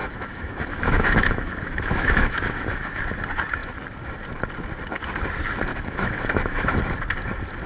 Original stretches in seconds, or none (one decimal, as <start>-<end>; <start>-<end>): 3.0-5.7; 6.8-7.7